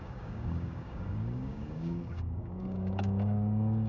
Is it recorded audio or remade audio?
remade